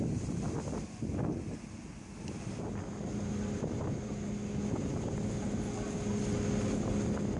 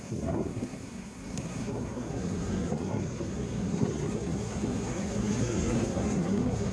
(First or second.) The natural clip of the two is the first